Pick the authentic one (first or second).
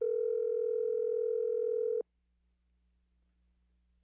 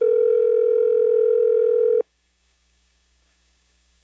first